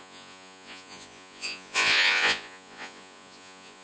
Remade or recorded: remade